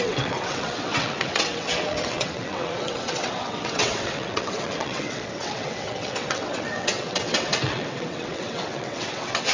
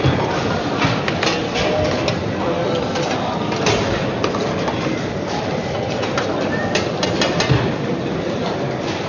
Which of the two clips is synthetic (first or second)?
first